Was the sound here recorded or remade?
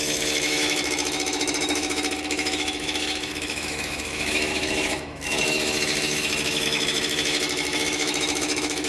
remade